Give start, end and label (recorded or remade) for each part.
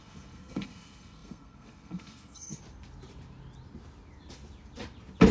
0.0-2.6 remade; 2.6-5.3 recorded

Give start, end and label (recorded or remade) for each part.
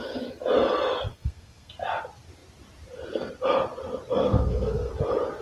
0.0-1.1 recorded; 1.1-1.7 remade; 1.7-4.2 recorded; 4.2-4.9 remade; 4.9-5.4 recorded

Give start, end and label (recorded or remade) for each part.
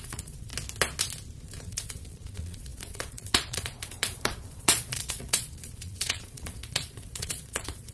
0.0-0.5 remade; 0.5-1.6 recorded; 1.6-7.9 remade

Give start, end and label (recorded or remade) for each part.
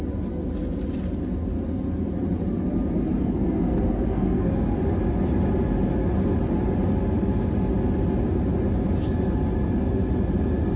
0.0-3.2 recorded; 3.2-4.5 remade; 4.5-10.8 recorded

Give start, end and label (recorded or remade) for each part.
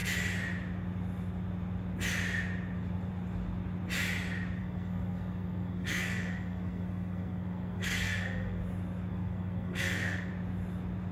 0.0-4.6 recorded; 4.6-8.6 remade; 8.6-9.1 recorded; 9.1-10.3 remade; 10.3-11.1 recorded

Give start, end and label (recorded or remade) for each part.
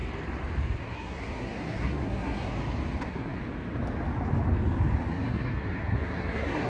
0.0-0.8 recorded; 0.8-2.5 remade; 2.5-3.0 recorded; 3.0-3.4 remade; 3.4-5.1 recorded; 5.1-6.7 remade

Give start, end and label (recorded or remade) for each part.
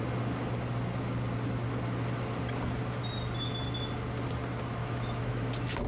0.0-4.8 recorded; 4.8-5.5 remade; 5.5-5.9 recorded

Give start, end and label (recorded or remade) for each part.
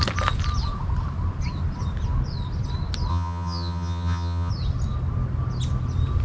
0.0-3.1 recorded; 3.1-4.5 remade; 4.5-6.2 recorded